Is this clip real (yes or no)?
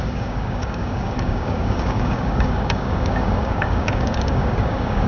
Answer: no